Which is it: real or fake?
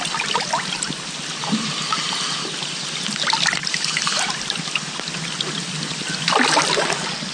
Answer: real